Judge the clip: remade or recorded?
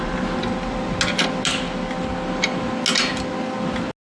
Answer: recorded